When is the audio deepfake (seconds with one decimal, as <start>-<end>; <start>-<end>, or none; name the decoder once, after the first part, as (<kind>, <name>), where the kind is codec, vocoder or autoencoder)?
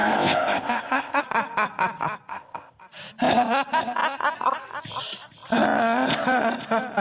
0.0-1.2 (codec, ZipCodec); 2.3-2.8